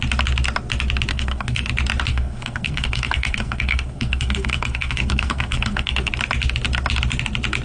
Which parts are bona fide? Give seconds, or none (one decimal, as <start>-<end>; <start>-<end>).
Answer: 0.0-1.1; 1.7-2.1; 6.1-7.6